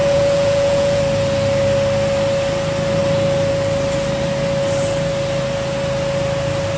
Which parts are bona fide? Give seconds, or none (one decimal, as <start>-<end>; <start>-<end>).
1.0-6.8